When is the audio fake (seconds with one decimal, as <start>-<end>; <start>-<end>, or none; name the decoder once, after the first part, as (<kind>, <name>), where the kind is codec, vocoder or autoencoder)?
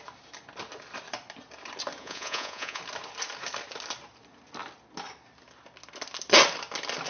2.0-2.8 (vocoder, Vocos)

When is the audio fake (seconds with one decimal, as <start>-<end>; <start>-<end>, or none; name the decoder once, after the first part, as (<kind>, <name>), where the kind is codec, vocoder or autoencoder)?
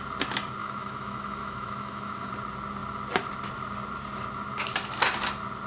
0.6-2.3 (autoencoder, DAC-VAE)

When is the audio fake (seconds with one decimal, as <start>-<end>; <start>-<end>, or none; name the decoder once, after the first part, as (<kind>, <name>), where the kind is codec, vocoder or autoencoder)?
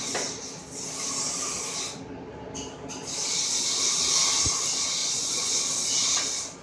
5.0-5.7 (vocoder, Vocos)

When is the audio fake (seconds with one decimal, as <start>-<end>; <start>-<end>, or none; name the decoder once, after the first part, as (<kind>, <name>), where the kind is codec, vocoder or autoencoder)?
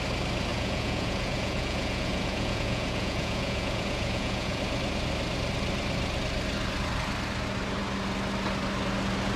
0.5-4.6 (vocoder, Vocos)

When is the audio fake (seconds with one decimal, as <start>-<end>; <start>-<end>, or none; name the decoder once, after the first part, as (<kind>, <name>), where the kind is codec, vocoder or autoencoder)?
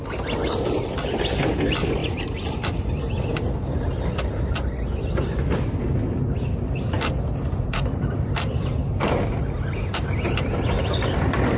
none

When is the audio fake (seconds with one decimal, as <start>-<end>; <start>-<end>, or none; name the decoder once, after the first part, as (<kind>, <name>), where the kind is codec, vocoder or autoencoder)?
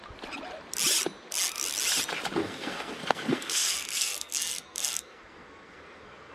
2.4-6.3 (codec, SNAC)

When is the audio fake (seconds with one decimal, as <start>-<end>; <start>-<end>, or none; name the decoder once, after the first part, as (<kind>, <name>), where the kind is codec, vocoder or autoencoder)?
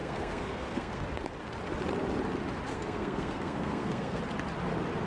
0.0-1.0 (codec, SNAC); 2.7-4.2